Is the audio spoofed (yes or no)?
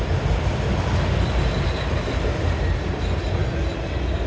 no